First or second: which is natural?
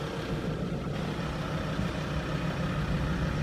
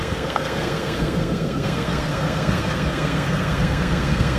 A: first